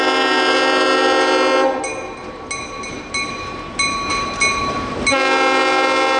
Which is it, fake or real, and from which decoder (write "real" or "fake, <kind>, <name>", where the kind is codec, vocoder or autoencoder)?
real